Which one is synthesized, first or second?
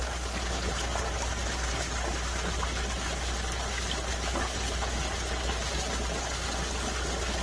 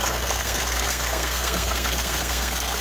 second